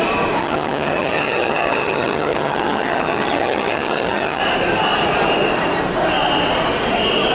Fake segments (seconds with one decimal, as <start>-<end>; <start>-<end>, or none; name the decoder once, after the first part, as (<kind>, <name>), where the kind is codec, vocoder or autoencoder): 0.4-4.4 (vocoder, HiFi-GAN)